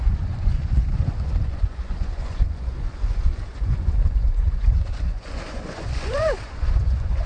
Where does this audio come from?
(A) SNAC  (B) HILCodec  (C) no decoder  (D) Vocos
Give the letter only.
D